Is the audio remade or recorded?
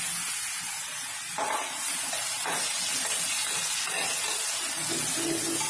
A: recorded